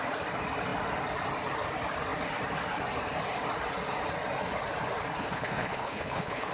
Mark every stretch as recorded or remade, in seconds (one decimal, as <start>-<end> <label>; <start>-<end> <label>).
0.0-5.2 recorded; 5.2-6.5 remade